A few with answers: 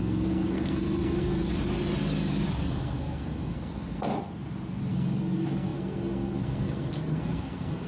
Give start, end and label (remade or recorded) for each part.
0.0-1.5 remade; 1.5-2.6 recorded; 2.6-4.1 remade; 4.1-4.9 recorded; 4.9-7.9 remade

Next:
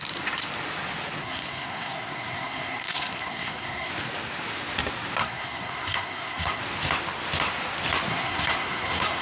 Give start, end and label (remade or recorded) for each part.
0.0-1.2 recorded; 1.2-3.9 remade; 3.9-5.2 recorded; 5.2-6.6 remade; 6.6-8.1 recorded; 8.1-9.2 remade

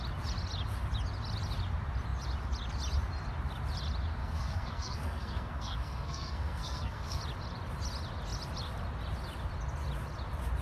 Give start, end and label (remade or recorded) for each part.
0.0-4.2 recorded; 4.2-7.2 remade; 7.2-10.6 recorded